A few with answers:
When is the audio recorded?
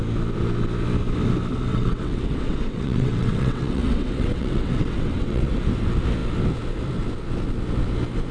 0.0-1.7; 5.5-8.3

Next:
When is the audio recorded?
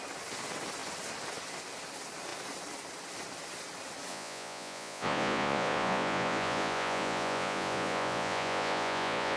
0.0-4.1